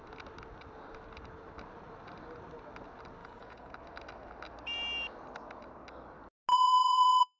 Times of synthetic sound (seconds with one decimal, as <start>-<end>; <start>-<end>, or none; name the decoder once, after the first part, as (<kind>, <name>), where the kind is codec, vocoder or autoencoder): 3.2-3.7 (vocoder, Vocos); 6.5-7.4